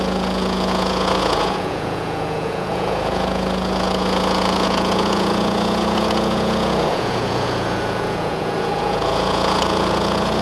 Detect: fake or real fake